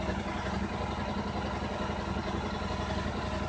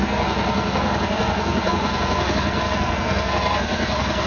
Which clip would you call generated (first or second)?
second